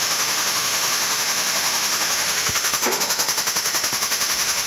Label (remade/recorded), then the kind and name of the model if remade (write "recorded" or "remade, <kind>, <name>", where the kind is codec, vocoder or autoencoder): remade, autoencoder, DAC-VAE